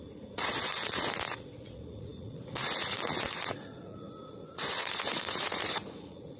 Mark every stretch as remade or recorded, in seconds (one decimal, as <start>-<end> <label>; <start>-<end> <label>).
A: 0.0-6.4 remade